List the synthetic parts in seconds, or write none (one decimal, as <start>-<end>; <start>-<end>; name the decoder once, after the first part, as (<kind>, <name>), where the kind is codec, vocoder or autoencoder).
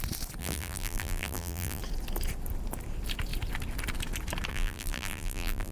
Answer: 0.4-1.8 (vocoder, BigVGAN v2); 4.5-5.7